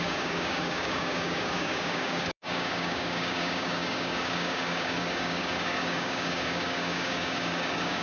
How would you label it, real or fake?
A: fake